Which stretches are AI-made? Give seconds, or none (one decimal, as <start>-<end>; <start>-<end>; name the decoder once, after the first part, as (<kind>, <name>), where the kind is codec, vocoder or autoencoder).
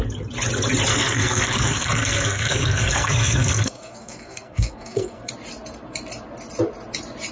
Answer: 0.9-5.3 (codec, SNAC)